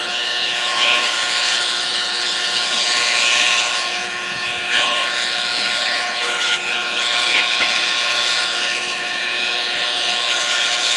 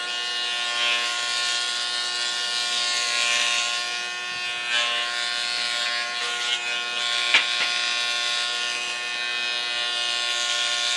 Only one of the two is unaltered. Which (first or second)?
second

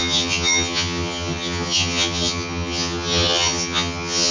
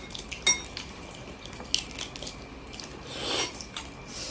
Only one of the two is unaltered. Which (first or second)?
second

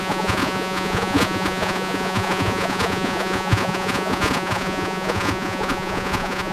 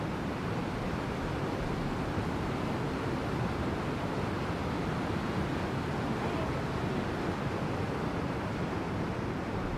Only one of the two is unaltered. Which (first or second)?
second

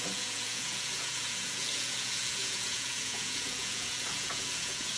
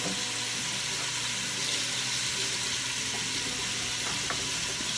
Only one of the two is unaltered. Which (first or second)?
second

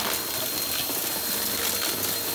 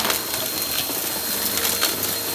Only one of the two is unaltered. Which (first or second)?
second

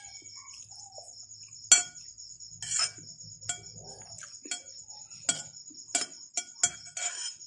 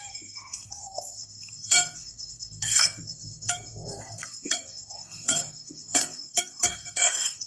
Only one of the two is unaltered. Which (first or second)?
first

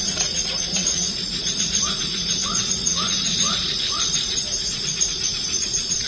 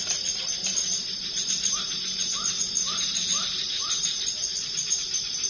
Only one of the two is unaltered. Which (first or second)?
second